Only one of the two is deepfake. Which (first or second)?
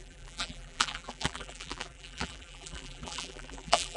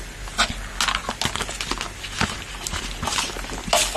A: first